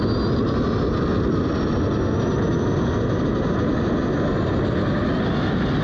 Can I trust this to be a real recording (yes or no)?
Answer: yes